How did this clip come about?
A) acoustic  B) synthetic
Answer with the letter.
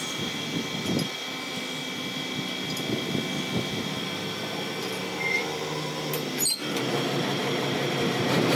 A